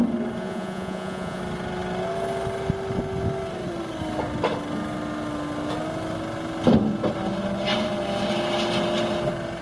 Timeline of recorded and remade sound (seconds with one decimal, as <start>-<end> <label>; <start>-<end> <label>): 0.0-0.4 recorded; 0.4-1.4 remade; 1.4-9.6 recorded